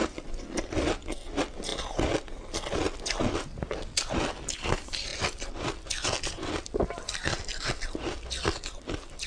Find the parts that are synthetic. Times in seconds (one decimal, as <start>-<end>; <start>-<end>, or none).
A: none